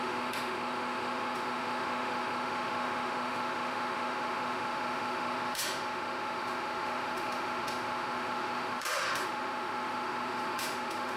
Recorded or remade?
remade